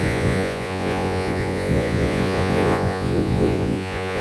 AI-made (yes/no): yes